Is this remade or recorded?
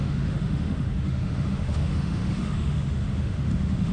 remade